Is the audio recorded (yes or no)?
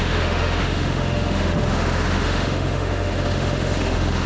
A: no